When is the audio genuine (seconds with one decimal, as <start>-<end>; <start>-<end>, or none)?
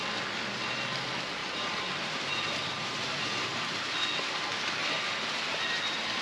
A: 0.0-1.4; 3.9-4.8; 5.6-6.2